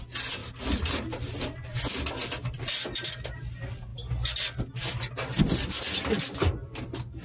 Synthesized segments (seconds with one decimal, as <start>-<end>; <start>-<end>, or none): 0.4-1.8